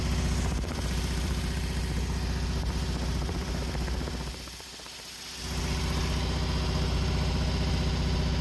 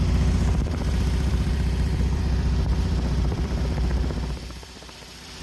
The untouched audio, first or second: first